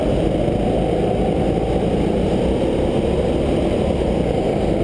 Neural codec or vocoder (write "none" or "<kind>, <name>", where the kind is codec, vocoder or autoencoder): none